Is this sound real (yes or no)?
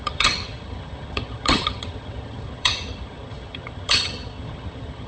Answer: no